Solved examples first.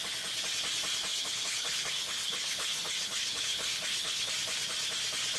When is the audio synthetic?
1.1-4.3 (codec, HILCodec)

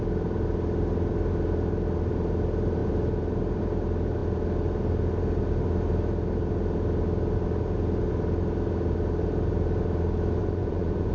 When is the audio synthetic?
10.4-11.1 (vocoder, Vocos)

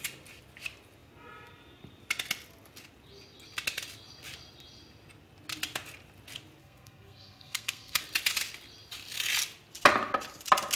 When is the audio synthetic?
6.6-8.0 (codec, SNAC)

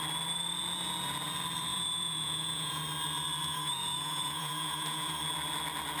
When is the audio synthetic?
1.7-2.8 (vocoder, Vocos); 3.4-5.2

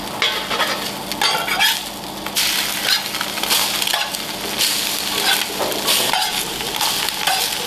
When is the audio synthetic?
none